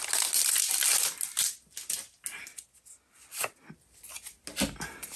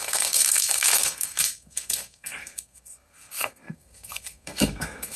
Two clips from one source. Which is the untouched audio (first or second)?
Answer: first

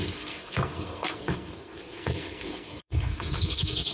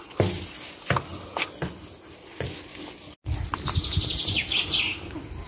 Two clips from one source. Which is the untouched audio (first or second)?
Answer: second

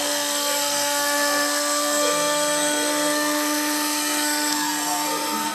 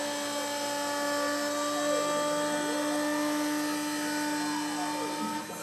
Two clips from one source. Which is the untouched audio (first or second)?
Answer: second